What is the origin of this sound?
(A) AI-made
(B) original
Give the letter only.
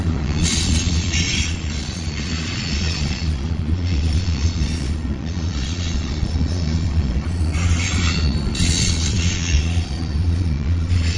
A